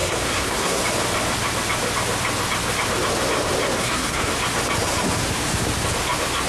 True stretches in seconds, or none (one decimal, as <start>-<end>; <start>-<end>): 0.8-3.8; 4.3-6.5